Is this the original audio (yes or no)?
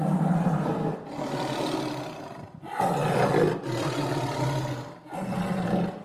yes